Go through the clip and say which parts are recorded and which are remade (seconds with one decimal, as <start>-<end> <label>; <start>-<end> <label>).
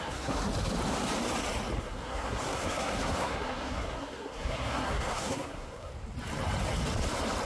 0.0-0.4 remade; 0.4-1.8 recorded; 1.8-5.9 remade; 5.9-7.5 recorded